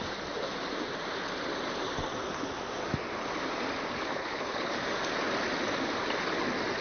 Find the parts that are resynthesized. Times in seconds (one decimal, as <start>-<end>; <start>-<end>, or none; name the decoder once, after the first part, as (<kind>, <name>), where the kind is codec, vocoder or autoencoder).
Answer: 4.1-4.7 (codec, HILCodec)